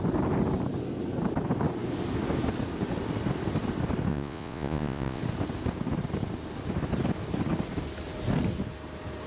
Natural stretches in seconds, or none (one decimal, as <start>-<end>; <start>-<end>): 0.0-4.1; 5.2-9.3